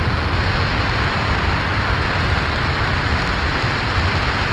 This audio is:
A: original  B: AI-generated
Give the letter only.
A